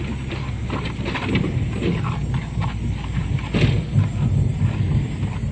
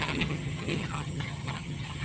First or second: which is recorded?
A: first